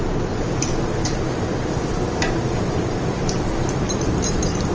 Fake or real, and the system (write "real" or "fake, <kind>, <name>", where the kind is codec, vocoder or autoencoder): fake, vocoder, BigVGAN v2